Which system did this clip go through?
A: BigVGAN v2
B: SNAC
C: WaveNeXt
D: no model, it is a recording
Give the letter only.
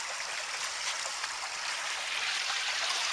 D